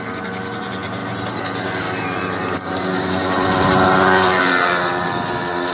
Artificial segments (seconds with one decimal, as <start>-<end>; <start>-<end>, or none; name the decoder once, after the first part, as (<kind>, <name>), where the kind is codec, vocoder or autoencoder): none